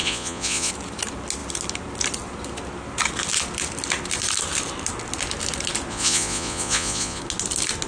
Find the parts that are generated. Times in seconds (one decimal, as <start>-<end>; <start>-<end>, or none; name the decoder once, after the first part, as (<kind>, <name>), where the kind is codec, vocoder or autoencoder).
0.0-0.7 (vocoder, Vocos); 5.9-7.2